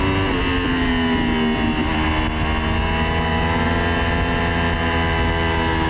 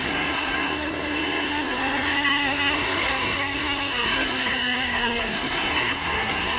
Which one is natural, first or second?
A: first